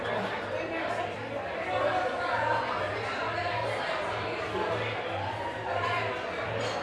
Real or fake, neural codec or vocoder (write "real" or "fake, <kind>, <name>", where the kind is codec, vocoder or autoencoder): real